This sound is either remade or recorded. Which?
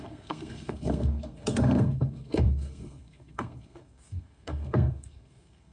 remade